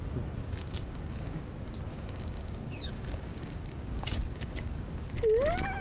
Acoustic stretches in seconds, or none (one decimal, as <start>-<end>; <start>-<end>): 0.0-0.4; 1.4-1.9; 5.1-5.8